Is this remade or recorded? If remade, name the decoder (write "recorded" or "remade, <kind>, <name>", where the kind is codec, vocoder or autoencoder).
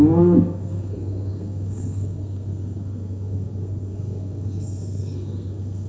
remade, codec, SNAC